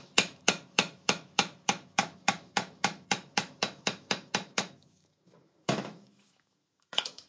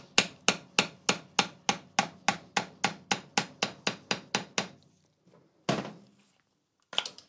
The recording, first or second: second